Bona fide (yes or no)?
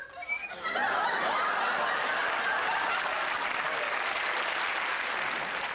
yes